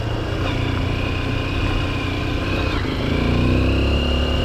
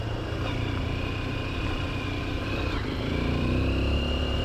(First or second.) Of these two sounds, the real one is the first